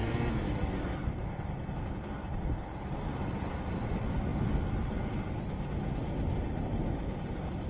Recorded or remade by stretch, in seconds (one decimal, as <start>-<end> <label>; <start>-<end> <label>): 0.0-7.7 recorded